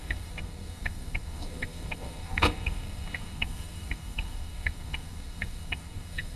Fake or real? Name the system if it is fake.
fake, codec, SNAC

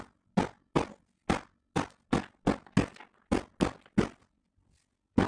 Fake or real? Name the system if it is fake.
real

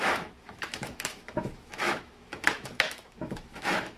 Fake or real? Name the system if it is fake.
fake, autoencoder, DAC-VAE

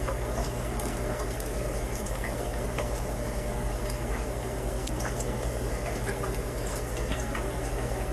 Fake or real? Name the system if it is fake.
fake, codec, SNAC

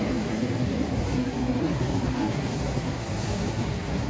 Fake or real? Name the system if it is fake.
fake, codec, SNAC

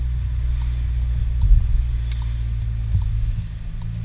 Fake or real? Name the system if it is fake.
real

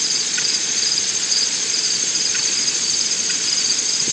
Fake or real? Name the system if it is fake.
fake, vocoder, Vocos